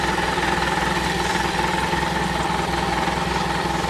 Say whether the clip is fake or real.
real